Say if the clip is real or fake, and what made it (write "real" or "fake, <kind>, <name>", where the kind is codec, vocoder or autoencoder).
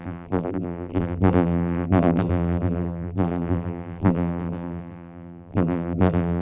fake, vocoder, BigVGAN v2